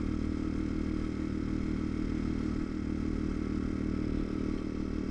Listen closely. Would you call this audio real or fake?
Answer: real